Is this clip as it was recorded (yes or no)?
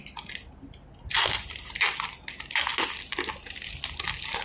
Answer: yes